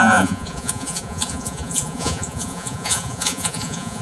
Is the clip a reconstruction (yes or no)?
yes